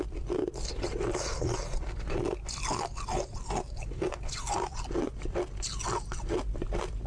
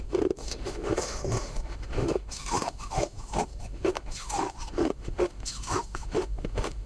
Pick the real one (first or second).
first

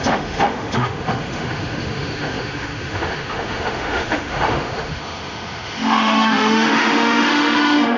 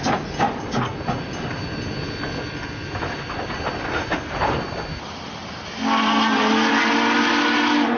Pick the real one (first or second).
second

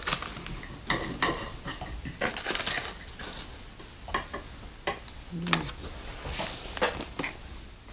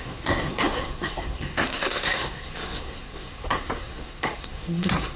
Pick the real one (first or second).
first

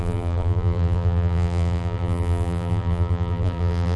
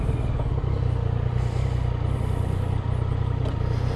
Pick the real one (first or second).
second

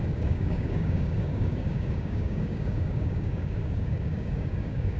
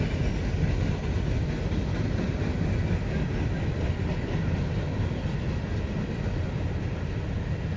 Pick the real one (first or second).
second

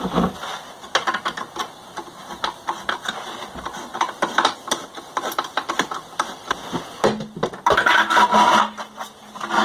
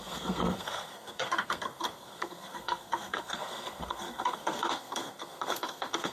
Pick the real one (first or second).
first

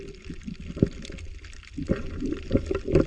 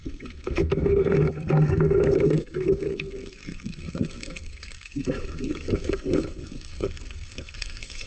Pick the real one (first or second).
first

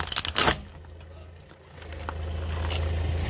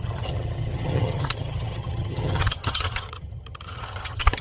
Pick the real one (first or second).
first